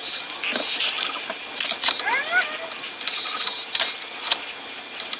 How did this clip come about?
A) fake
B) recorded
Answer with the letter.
B